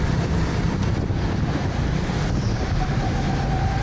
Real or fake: real